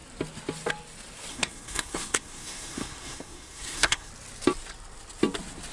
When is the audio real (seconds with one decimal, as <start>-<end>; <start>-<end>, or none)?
0.0-1.3; 4.1-5.7